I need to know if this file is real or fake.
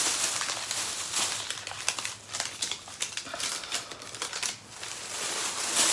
real